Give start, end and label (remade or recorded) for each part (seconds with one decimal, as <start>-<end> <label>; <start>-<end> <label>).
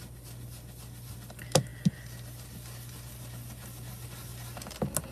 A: 0.0-5.1 recorded